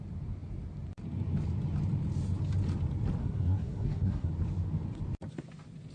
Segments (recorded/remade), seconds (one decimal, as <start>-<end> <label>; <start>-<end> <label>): 0.0-3.2 recorded; 3.2-4.3 remade; 4.3-5.9 recorded